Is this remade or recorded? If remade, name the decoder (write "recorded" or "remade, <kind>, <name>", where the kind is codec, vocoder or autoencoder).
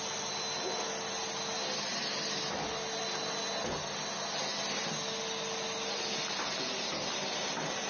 recorded